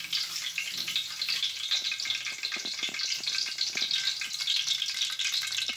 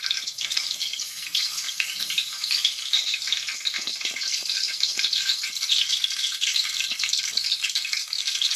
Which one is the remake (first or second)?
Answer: second